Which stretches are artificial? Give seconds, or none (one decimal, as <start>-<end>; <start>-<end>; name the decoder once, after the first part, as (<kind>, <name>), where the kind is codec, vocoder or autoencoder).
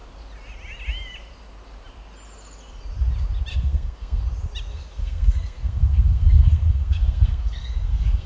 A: 3.5-4.2 (codec, SNAC); 4.7-8.3